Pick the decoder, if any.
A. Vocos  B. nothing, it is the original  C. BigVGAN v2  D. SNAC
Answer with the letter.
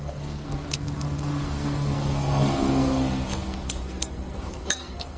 D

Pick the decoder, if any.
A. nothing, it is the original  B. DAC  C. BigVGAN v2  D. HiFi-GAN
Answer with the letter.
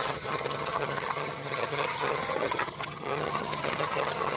D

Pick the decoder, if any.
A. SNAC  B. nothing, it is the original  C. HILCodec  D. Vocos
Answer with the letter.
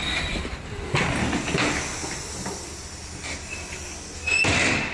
B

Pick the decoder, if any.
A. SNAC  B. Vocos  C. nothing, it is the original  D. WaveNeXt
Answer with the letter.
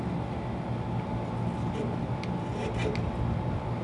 C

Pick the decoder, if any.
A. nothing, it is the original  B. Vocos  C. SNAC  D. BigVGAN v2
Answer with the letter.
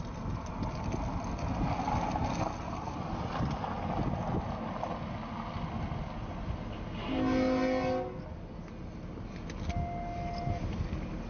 A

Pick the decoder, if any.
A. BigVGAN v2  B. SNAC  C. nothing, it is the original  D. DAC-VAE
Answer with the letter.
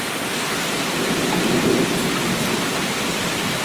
C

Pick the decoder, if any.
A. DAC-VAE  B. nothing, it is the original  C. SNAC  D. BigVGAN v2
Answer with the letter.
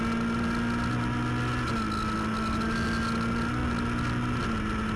B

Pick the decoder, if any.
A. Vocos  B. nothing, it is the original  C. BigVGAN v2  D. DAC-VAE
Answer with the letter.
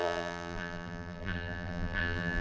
C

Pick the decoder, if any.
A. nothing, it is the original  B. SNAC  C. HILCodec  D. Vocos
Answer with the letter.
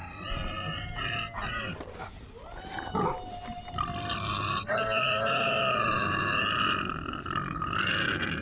A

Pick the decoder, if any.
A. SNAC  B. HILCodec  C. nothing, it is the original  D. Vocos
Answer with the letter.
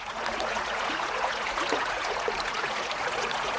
D